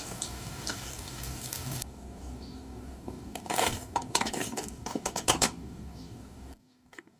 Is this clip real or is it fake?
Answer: fake